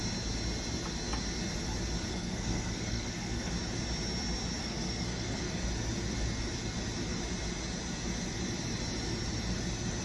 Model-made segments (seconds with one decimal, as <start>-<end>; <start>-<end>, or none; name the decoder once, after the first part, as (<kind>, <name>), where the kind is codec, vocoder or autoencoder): 2.1-3.5 (codec, SNAC); 4.6-5.6